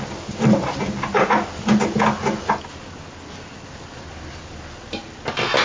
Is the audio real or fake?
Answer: real